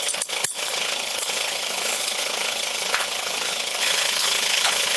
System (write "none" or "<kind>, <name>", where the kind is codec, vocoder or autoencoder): codec, HILCodec